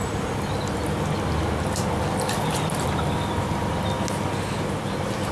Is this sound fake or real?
real